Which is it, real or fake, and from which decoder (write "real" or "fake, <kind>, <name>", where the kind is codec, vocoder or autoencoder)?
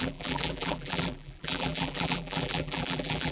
fake, vocoder, BigVGAN v2